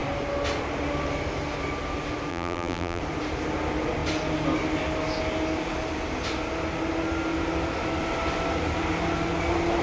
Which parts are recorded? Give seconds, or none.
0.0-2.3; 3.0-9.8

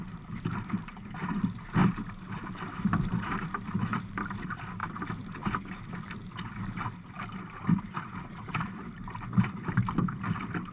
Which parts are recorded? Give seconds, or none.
4.8-7.8

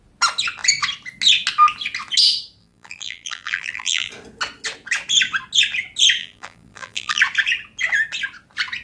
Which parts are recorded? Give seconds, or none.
0.0-2.6; 4.1-6.2; 7.2-8.8

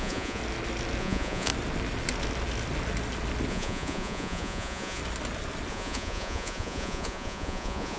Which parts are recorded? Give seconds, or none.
0.4-1.0; 1.5-3.5; 5.0-5.7